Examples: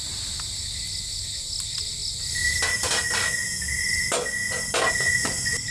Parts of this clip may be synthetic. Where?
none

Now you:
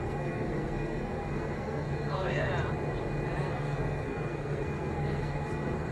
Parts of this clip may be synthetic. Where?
0.0-2.5 (codec, SNAC); 3.4-5.9

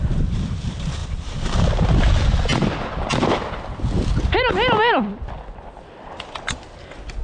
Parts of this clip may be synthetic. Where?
none

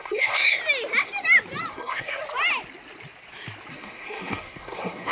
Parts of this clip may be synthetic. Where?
0.0-0.6 (codec, SNAC); 1.7-2.2; 3.7-5.1

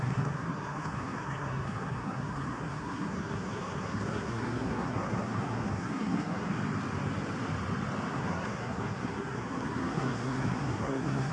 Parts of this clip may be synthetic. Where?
0.0-6.5 (codec, SNAC); 8.1-11.3

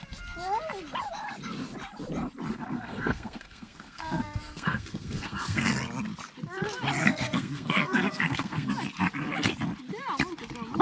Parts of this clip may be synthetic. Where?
2.5-5.7 (codec, SNAC); 7.0-8.7